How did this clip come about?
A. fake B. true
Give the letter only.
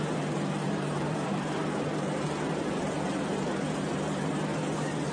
A